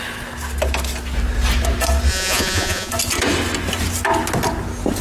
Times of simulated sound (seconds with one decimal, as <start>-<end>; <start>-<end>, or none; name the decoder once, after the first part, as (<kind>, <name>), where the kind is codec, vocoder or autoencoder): 2.1-2.9 (vocoder, Vocos)